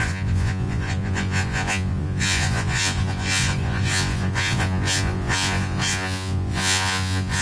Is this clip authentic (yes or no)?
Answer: no